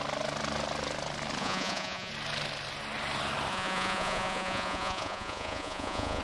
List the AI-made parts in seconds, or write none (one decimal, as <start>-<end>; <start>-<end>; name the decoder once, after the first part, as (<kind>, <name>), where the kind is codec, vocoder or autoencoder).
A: 1.4-2.1 (vocoder, Vocos); 3.5-6.2